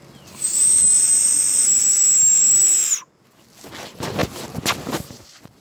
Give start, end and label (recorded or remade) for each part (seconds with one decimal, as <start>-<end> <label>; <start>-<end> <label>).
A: 0.0-5.6 recorded